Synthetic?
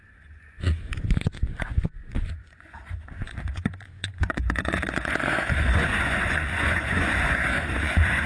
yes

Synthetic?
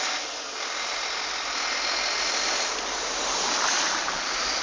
no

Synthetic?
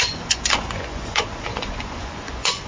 yes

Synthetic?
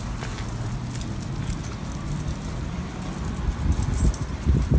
no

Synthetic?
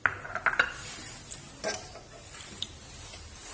no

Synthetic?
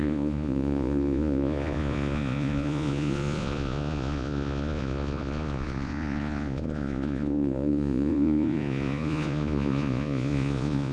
yes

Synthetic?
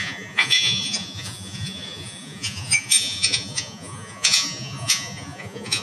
yes